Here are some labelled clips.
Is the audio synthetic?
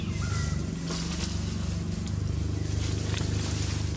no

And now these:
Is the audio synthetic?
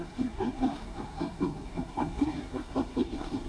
yes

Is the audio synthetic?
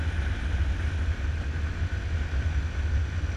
no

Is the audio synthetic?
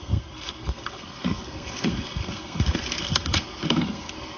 yes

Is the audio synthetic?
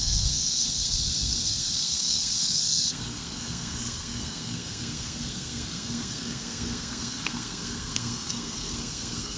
yes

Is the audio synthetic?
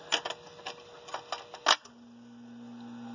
no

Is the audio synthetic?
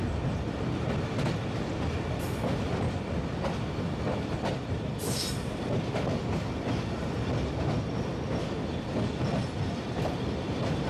no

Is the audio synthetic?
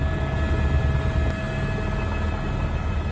no